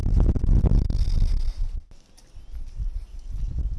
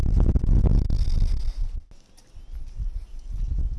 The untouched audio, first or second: second